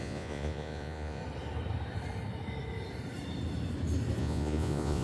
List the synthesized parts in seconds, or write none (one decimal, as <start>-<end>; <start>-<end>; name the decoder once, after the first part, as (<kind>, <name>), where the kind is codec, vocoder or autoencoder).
0.0-1.2 (vocoder, Vocos); 4.2-5.0